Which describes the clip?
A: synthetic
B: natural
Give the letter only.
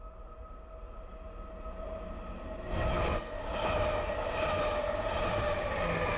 B